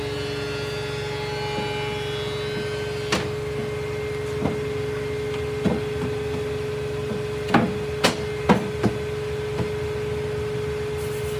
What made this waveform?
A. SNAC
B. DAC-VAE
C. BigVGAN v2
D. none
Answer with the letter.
D